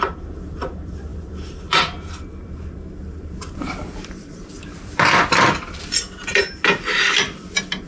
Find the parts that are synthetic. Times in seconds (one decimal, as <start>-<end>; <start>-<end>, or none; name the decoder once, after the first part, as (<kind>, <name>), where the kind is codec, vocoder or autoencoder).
0.0-7.9 (vocoder, BigVGAN v2)